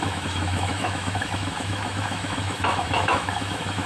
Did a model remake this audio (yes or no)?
yes